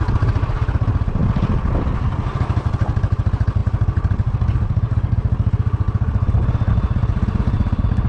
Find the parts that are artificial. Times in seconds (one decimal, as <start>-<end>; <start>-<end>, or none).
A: none